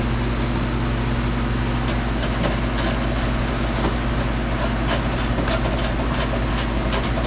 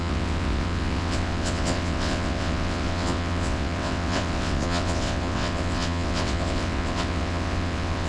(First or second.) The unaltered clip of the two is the first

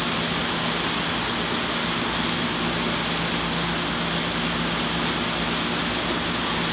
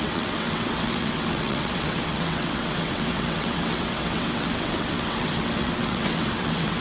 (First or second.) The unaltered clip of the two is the first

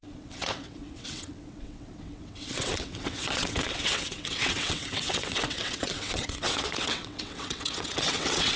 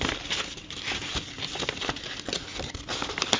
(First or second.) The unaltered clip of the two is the second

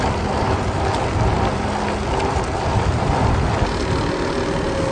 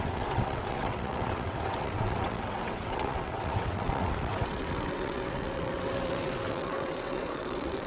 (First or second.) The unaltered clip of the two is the first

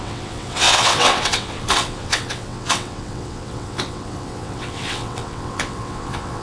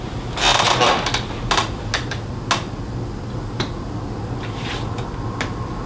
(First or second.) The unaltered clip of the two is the second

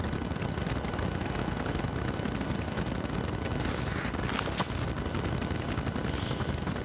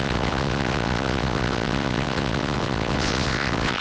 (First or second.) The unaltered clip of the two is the first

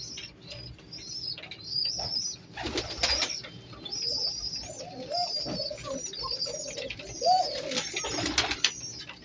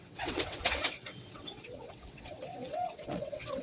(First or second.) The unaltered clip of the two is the first